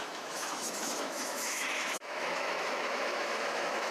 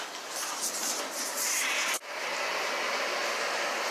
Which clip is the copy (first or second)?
first